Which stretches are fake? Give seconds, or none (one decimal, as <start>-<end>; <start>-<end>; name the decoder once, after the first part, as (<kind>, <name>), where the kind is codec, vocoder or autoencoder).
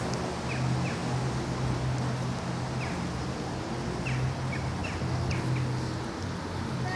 none